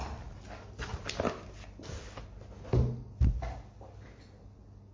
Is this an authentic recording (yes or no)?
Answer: yes